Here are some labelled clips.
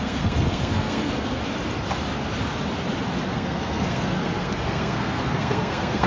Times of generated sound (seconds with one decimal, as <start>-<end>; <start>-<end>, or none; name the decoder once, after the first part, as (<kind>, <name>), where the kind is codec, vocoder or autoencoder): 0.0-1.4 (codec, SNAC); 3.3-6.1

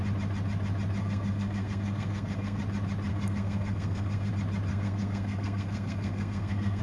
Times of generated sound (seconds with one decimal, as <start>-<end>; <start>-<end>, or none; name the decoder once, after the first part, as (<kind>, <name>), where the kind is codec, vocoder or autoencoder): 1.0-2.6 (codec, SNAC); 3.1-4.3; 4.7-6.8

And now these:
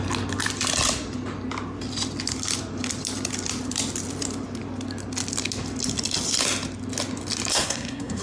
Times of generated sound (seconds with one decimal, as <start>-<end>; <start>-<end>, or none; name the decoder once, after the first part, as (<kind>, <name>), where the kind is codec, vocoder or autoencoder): 7.5-8.2 (codec, SNAC)

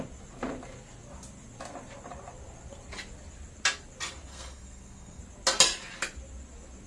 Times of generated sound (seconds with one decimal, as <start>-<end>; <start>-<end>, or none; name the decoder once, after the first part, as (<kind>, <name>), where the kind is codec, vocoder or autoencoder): 4.3-5.2 (codec, SNAC)